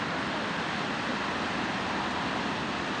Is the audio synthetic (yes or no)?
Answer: no